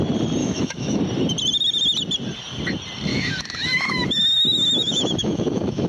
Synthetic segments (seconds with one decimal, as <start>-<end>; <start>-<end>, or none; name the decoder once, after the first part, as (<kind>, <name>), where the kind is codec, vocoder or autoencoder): 0.4-1.0 (autoencoder, DAC-VAE); 3.1-5.9